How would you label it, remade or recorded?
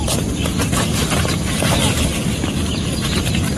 remade